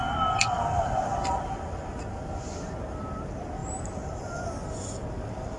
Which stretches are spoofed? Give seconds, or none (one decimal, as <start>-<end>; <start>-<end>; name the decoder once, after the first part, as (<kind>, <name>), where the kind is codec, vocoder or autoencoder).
none